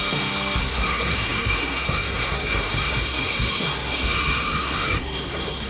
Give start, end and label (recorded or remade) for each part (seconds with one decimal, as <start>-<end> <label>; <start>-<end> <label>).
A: 0.0-0.7 recorded; 0.7-5.7 remade